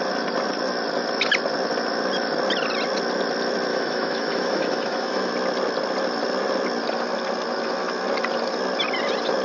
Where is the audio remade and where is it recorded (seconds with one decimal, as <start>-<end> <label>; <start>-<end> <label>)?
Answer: 0.0-3.7 recorded; 3.7-5.3 remade; 5.3-9.4 recorded